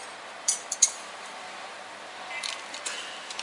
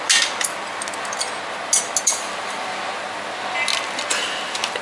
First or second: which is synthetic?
first